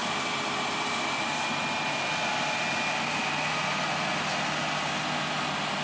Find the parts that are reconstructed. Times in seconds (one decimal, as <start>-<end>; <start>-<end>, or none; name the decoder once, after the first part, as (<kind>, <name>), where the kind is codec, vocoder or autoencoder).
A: none